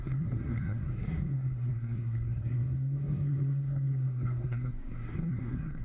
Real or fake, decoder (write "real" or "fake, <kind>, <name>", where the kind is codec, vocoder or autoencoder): fake, codec, SNAC